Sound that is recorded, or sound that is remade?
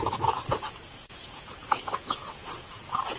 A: remade